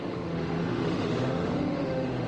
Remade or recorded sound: remade